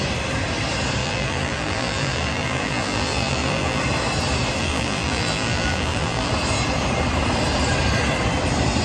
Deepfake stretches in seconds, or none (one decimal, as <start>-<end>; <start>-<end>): 1.0-3.8; 4.6-6.3